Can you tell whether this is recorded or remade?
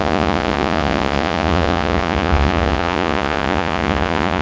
remade